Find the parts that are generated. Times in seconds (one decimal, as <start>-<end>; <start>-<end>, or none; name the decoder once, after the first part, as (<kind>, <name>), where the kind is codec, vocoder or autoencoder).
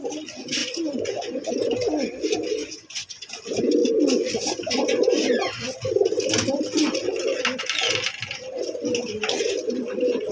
0.6-1.5 (vocoder, Vocos); 2.6-3.3